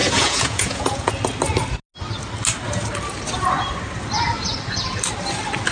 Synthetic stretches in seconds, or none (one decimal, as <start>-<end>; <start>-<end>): 0.0-1.1